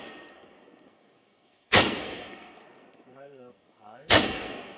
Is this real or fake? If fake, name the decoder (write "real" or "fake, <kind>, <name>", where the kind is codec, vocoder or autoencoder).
fake, codec, SNAC